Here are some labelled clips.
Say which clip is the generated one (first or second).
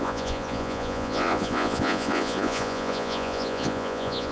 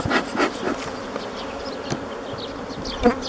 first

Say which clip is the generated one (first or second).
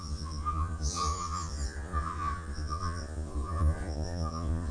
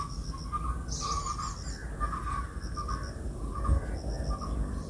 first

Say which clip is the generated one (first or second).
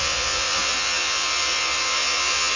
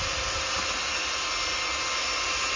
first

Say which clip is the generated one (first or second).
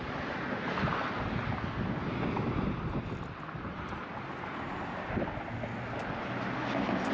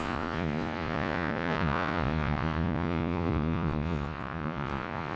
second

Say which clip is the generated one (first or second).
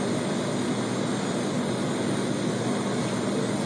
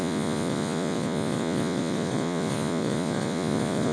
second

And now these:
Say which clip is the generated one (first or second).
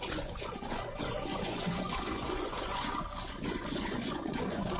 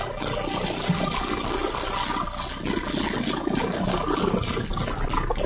first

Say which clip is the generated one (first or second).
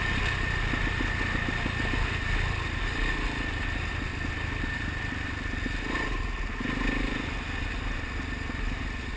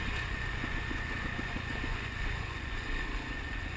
second